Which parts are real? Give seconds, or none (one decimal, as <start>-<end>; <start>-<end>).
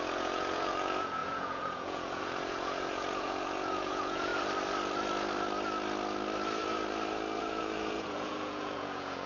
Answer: 4.3-7.4